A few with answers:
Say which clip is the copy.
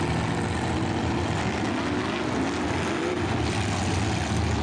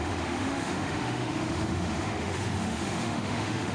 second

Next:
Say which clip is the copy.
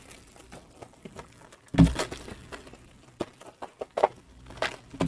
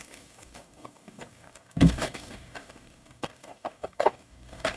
second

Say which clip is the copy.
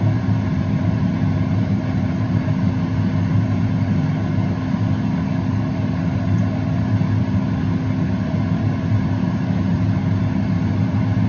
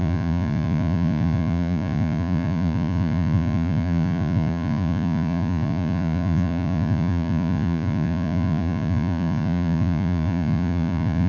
second